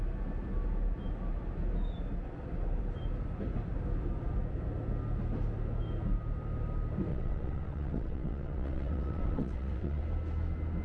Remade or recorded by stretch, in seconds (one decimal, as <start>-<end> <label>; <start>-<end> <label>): 0.0-7.1 recorded; 7.1-10.0 remade; 10.0-10.8 recorded